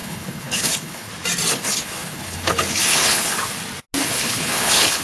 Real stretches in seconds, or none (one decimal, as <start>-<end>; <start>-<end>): 1.1-1.5; 3.3-4.0